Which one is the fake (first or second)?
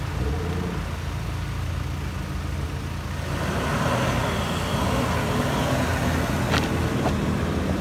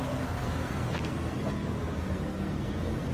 second